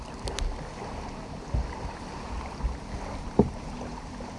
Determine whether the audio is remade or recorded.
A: recorded